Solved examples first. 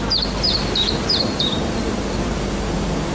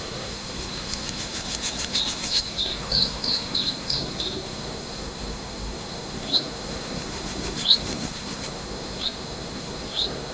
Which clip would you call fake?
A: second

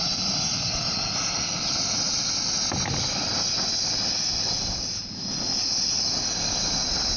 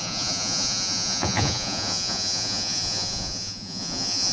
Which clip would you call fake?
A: second